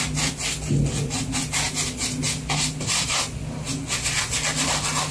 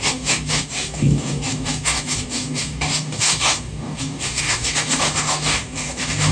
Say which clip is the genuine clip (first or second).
first